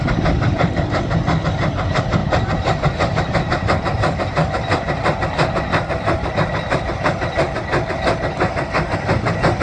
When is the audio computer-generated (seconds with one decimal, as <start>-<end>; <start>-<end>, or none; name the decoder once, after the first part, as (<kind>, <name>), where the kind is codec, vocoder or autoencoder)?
none